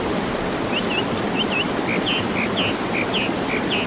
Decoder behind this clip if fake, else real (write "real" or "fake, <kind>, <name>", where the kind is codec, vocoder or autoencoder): real